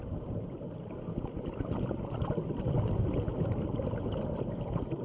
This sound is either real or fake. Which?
real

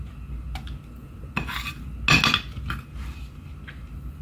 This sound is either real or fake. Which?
real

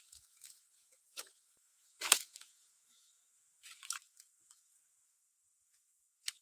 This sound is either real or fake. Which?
fake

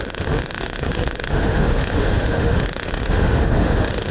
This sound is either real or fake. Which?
fake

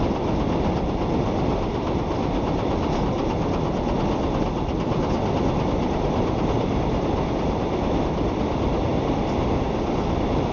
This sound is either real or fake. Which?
real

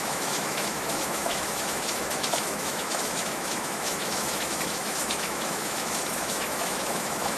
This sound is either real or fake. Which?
fake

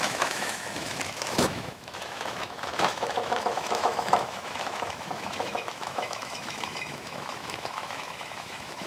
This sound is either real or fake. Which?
fake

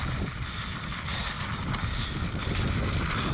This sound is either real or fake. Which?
real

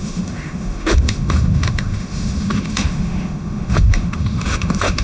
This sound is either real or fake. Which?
fake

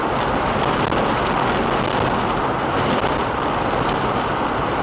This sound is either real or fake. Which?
real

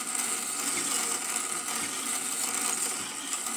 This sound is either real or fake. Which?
real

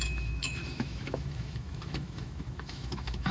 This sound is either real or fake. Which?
fake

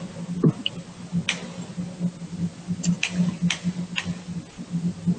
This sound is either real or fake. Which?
real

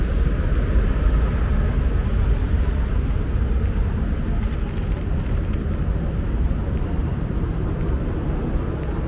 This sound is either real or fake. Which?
real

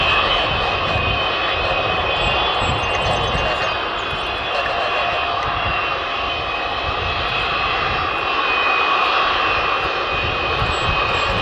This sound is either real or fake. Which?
real